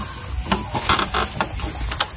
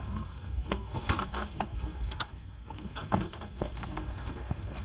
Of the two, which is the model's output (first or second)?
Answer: second